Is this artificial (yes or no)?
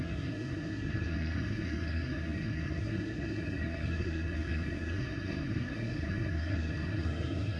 yes